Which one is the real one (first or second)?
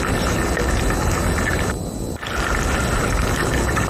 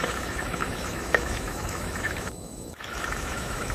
first